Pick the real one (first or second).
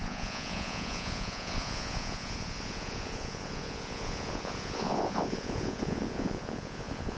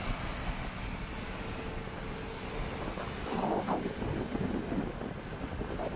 second